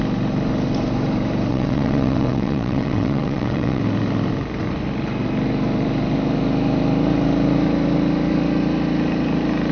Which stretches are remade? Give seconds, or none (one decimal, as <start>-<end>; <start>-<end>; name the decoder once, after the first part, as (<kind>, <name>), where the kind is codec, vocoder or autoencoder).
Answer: 1.5-3.8 (vocoder, WaveNeXt)